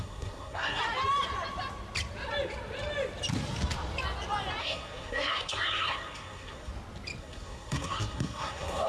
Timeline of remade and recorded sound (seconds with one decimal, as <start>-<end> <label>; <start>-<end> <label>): 0.0-0.8 remade; 0.8-4.6 recorded; 4.6-6.7 remade; 6.7-7.2 recorded; 7.2-8.9 remade